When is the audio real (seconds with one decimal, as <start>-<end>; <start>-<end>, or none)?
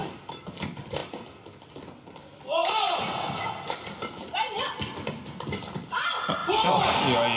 0.0-7.4